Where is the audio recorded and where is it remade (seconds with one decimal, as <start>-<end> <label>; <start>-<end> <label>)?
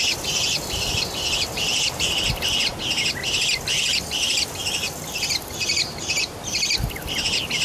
0.0-2.7 remade; 2.7-3.8 recorded; 3.8-7.6 remade